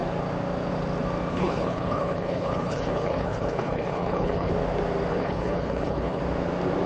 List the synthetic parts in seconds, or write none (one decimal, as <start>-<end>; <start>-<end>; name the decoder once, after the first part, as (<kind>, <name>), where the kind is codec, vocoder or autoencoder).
1.3-4.5 (codec, HILCodec); 5.1-6.2

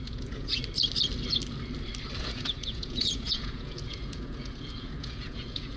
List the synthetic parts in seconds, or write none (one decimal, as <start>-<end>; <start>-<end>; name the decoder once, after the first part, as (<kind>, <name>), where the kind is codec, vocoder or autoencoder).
0.0-0.6 (vocoder, Vocos); 2.2-5.8